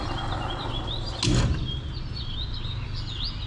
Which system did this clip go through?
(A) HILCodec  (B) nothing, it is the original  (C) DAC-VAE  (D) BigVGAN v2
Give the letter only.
B